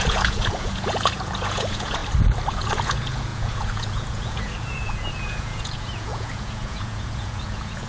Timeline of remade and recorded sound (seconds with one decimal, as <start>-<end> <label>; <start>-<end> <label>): 0.0-2.0 remade; 2.0-2.5 recorded; 2.5-7.9 remade